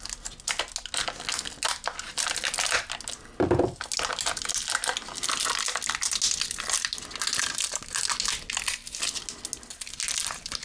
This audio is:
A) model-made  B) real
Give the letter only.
B